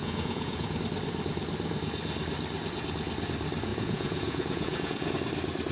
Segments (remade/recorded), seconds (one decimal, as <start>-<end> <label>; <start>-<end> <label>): 0.0-0.8 remade; 0.8-3.7 recorded; 3.7-5.1 remade; 5.1-5.7 recorded